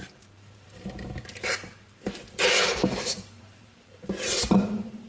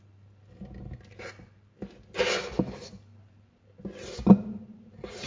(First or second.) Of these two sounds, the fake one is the first